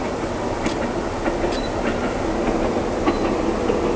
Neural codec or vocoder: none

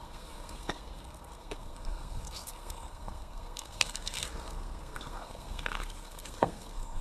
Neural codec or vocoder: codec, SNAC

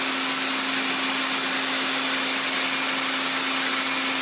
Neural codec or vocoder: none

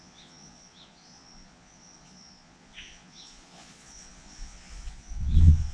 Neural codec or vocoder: vocoder, Vocos